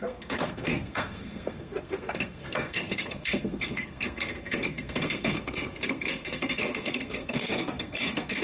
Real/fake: fake